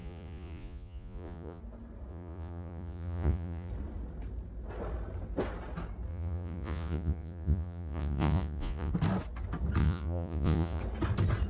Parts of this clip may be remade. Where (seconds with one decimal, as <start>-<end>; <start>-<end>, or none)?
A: 0.0-1.6; 2.1-3.7; 6.1-8.9; 9.8-10.8